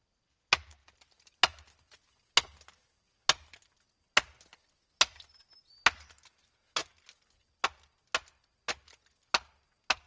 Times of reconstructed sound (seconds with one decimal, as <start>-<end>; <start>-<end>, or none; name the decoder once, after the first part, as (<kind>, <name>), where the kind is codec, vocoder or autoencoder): none